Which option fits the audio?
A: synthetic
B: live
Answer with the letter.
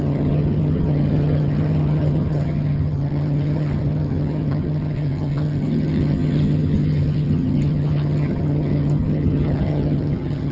A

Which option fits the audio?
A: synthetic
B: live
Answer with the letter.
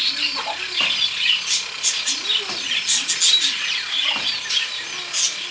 B